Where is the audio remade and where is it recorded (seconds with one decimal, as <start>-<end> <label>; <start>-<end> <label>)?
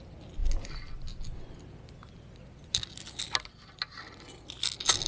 0.0-5.1 recorded